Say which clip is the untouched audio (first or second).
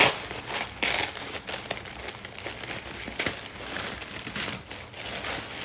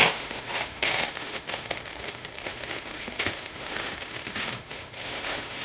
first